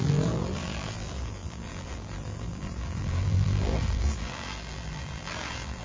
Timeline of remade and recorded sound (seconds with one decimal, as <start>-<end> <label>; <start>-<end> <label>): 0.0-5.8 remade

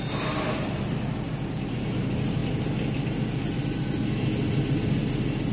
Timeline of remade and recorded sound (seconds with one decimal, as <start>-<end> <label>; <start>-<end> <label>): 0.0-5.5 recorded

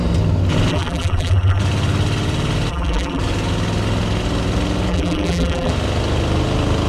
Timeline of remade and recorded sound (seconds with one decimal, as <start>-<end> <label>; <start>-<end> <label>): 0.0-0.7 recorded; 0.7-1.6 remade; 1.6-2.7 recorded; 2.7-3.2 remade; 3.2-4.9 recorded; 4.9-5.7 remade; 5.7-6.9 recorded

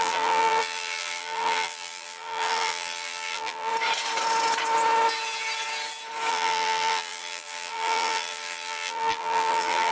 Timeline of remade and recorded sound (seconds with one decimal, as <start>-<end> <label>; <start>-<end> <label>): 0.0-3.7 remade; 3.7-6.3 recorded; 6.3-9.9 remade

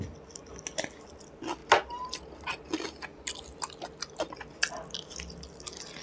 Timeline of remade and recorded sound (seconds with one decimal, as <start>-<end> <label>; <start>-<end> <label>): 0.0-1.6 recorded; 1.6-2.2 remade; 2.2-6.0 recorded

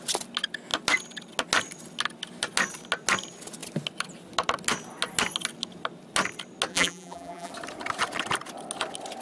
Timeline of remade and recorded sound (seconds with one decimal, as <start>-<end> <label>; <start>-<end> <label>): 0.0-6.7 recorded; 6.7-7.5 remade; 7.5-9.2 recorded

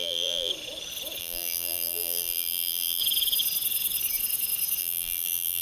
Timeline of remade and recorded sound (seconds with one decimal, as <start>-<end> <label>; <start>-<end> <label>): 0.0-0.5 remade; 0.5-1.2 recorded; 1.2-3.0 remade; 3.0-4.8 recorded; 4.8-5.6 remade

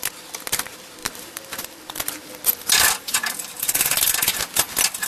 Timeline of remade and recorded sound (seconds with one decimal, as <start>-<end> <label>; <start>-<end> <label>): 0.0-1.0 recorded; 1.0-4.1 remade; 4.1-5.1 recorded